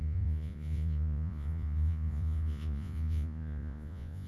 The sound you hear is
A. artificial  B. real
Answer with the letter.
A